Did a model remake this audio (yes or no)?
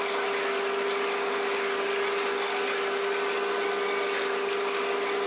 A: no